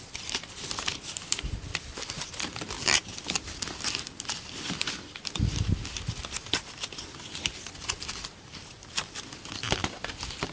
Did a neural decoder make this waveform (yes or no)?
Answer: yes